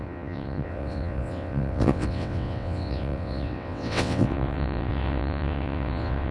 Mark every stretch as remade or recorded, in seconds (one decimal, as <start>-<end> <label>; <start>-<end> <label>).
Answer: 0.0-6.3 remade